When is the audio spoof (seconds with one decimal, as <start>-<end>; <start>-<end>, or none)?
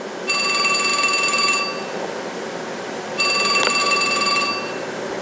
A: 3.8-5.2